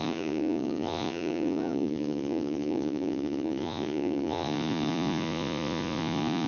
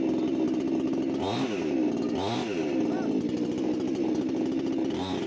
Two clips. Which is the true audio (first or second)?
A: second